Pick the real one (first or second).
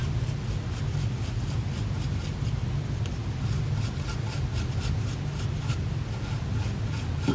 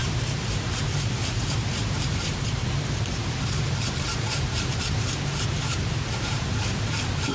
first